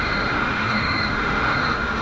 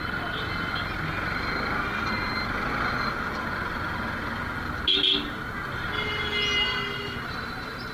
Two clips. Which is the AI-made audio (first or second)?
first